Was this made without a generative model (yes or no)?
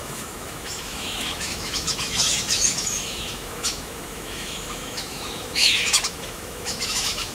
no